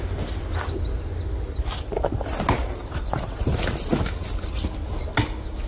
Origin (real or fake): real